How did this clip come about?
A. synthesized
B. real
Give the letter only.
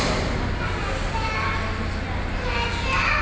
B